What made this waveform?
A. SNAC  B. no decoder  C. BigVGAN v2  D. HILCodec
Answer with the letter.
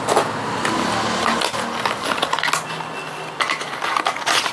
B